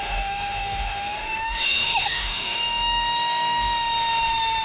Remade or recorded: remade